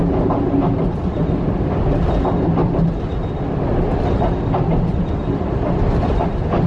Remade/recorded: recorded